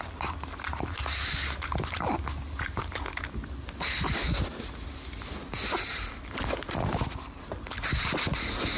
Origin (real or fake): real